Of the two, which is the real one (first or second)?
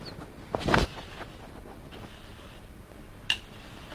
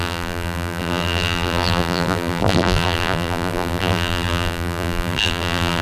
first